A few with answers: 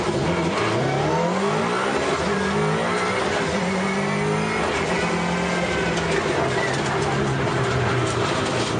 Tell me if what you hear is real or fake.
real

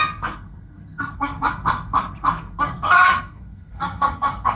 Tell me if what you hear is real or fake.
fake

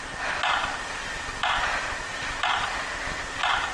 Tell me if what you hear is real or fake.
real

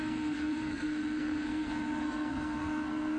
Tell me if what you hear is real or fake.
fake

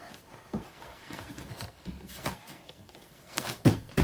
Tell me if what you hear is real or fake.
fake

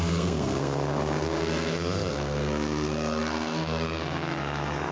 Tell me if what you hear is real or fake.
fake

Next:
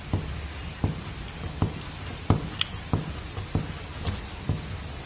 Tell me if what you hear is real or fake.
real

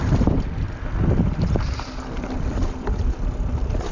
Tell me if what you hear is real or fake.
real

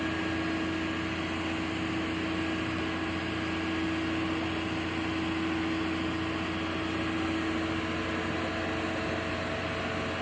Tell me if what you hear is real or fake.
real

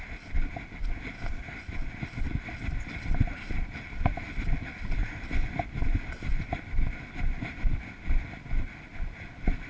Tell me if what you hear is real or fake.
real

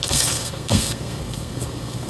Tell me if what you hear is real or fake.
fake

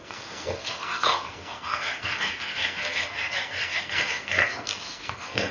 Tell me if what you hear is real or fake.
fake